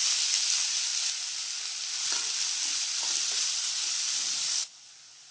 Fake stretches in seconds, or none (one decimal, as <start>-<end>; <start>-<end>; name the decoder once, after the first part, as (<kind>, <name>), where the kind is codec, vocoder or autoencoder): none